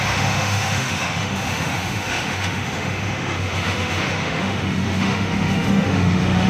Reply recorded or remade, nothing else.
remade